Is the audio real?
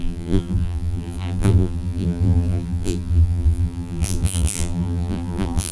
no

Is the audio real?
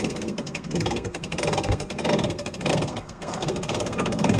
no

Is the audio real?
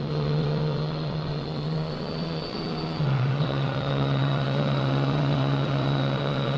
no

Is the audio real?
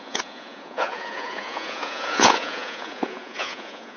no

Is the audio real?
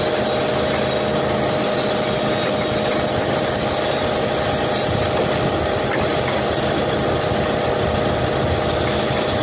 yes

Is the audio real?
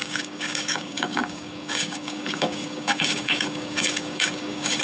no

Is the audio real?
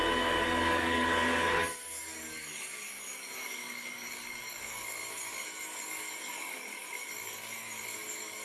no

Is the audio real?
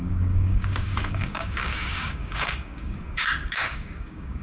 no